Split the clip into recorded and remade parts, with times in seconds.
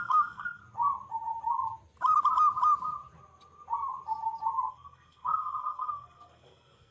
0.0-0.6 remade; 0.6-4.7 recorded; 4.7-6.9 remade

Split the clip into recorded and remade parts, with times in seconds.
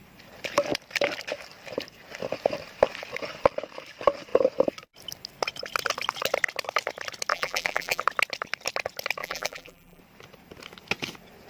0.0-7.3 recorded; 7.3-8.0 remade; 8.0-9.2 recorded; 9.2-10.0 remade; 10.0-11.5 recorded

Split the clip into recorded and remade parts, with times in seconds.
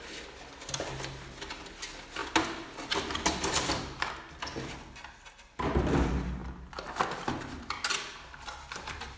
0.0-9.2 recorded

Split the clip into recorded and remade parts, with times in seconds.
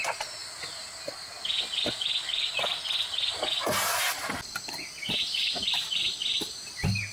0.0-7.1 recorded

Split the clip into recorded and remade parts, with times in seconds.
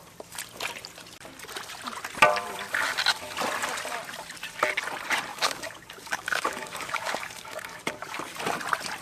0.0-5.3 recorded; 5.3-8.4 remade; 8.4-9.0 recorded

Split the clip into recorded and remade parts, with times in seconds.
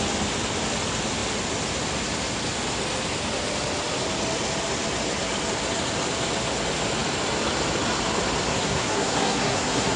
0.0-8.5 recorded; 8.5-10.0 remade